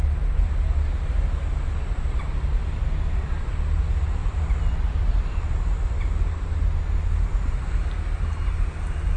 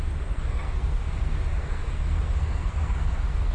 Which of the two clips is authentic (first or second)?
first